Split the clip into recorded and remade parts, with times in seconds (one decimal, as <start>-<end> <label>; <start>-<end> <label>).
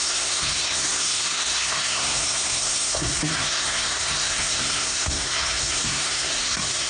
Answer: 0.0-6.9 remade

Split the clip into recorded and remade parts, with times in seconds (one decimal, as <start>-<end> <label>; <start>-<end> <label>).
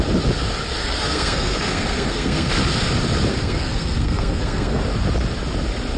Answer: 0.0-0.8 recorded; 0.8-2.5 remade; 2.5-3.3 recorded; 3.3-4.8 remade; 4.8-6.0 recorded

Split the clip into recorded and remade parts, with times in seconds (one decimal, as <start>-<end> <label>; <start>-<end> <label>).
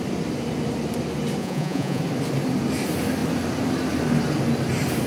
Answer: 0.0-1.4 recorded; 1.4-2.0 remade; 2.0-5.1 recorded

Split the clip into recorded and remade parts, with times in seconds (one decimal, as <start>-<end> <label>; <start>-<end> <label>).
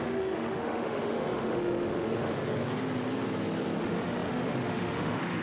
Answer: 0.0-2.4 remade; 2.4-3.8 recorded; 3.8-5.4 remade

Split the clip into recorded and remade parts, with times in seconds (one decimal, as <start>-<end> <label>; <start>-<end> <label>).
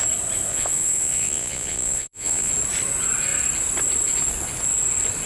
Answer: 0.0-0.5 recorded; 0.5-2.5 remade; 2.5-5.3 recorded